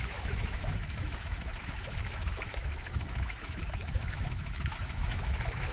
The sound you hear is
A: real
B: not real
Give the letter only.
B